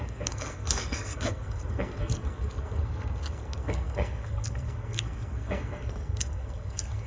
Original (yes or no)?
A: no